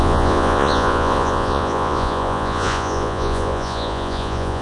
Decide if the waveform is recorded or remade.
remade